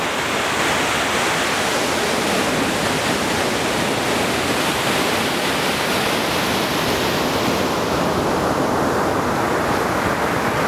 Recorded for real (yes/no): yes